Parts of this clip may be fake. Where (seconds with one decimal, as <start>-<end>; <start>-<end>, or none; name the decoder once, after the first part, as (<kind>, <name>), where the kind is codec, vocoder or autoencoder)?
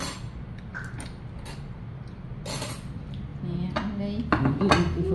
none